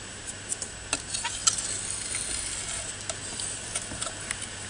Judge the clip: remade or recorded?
recorded